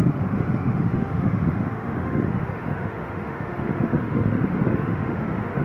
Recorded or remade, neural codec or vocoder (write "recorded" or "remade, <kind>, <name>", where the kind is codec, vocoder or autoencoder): remade, autoencoder, DAC-VAE